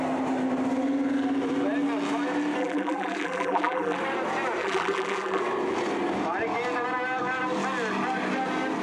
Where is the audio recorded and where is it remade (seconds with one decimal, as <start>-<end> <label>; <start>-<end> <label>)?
0.0-2.6 recorded; 2.6-4.0 remade; 4.0-4.6 recorded; 4.6-5.4 remade; 5.4-8.8 recorded